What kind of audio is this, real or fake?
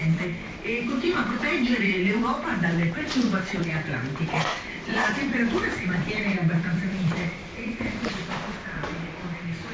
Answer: fake